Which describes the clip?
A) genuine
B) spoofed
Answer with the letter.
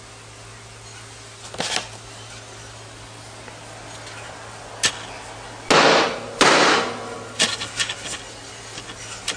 A